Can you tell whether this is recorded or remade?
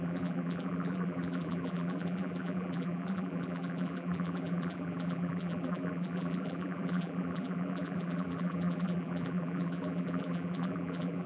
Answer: remade